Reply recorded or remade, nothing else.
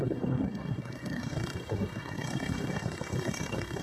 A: remade